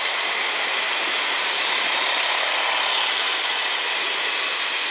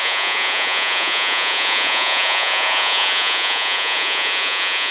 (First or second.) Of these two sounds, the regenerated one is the second